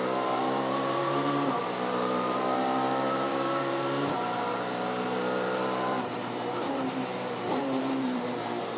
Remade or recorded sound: remade